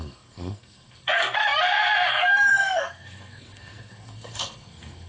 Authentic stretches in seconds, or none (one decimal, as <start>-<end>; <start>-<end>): 1.4-2.1